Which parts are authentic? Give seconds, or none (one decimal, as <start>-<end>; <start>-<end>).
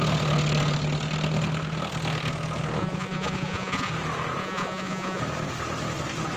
0.0-2.8; 3.9-4.4; 5.2-6.4